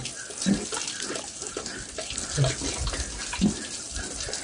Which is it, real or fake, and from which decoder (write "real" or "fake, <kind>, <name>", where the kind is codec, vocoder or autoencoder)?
real